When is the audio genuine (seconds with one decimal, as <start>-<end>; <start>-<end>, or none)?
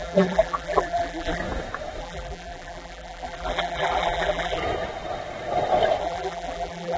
1.4-2.0; 4.6-6.0